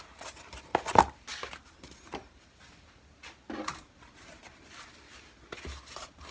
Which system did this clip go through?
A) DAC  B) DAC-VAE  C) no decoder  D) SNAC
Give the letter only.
C